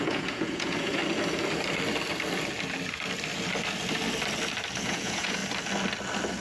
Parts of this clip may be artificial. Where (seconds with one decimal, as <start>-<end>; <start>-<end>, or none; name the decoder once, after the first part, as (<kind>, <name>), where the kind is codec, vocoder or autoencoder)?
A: 0.0-1.0 (vocoder, Vocos); 4.8-5.4